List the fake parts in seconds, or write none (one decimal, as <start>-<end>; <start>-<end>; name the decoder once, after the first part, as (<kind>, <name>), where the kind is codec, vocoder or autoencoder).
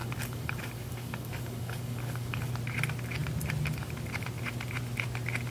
0.0-2.5 (codec, DAC)